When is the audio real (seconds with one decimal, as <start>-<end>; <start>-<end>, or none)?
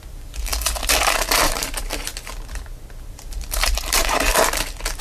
0.5-1.4; 2.1-3.1; 4.3-5.0